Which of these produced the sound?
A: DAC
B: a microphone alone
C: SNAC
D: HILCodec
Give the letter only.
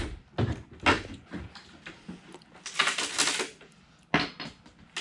B